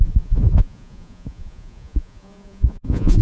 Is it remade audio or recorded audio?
remade